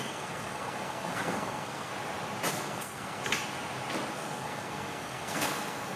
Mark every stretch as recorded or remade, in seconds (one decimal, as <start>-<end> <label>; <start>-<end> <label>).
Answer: 0.0-1.9 remade; 1.9-2.5 recorded; 2.5-3.2 remade; 3.2-4.1 recorded; 4.1-6.0 remade